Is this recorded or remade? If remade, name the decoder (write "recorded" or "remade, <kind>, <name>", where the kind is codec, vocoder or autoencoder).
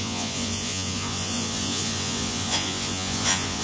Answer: remade, vocoder, Vocos